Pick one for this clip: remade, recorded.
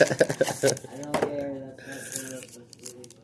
recorded